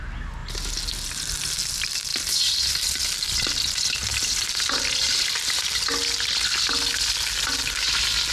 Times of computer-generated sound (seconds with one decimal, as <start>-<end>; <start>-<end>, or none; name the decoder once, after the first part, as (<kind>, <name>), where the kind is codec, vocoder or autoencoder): none